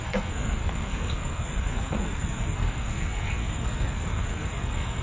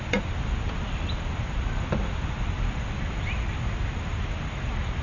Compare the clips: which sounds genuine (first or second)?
second